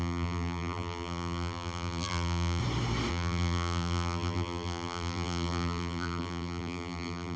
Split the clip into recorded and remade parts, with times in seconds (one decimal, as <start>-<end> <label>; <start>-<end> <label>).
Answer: 0.0-2.6 remade; 2.6-3.1 recorded; 3.1-7.4 remade